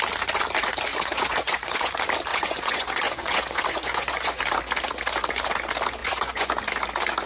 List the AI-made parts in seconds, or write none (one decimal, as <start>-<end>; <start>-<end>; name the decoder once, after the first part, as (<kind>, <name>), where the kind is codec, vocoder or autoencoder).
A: 0.9-1.9 (vocoder, Vocos); 2.3-4.4; 6.0-6.5